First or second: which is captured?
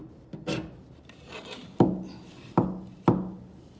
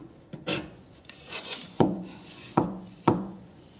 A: first